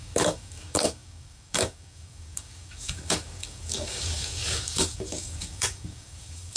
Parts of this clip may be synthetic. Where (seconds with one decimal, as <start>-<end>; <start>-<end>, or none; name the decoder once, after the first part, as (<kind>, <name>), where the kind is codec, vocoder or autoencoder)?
0.0-6.6 (codec, DAC)